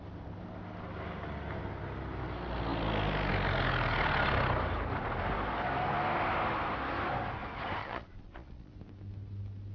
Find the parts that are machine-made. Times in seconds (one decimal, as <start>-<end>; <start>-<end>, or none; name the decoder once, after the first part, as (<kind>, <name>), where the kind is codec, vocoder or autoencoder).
7.8-8.7 (vocoder, Vocos)